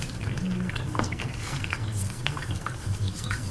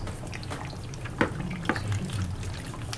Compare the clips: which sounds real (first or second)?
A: second